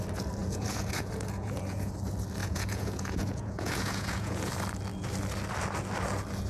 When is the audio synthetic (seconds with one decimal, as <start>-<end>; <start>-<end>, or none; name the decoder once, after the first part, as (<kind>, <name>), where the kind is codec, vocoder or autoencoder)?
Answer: 0.4-1.9 (vocoder, Vocos); 2.4-4.5